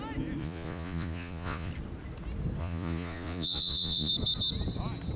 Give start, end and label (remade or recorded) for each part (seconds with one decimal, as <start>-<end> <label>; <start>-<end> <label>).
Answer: 0.0-0.4 recorded; 0.4-1.7 remade; 1.7-2.6 recorded; 2.6-4.1 remade; 4.1-5.2 recorded